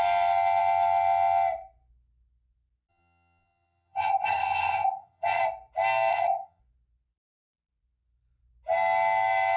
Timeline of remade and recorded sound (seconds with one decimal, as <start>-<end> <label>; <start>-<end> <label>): 0.0-2.9 recorded; 2.9-5.4 remade; 5.4-6.1 recorded; 6.1-6.6 remade; 6.6-9.6 recorded